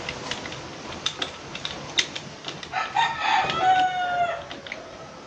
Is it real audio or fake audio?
real